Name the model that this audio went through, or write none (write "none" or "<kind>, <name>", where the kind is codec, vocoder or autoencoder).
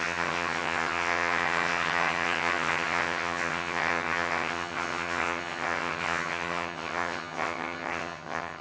vocoder, HiFi-GAN